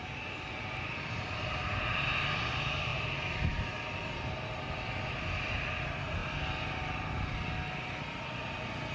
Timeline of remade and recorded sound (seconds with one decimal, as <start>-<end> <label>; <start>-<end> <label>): 0.0-8.9 recorded